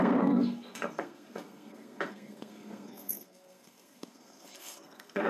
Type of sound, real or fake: fake